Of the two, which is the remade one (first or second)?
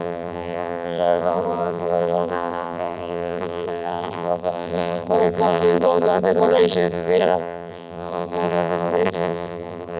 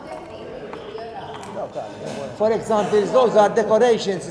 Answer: first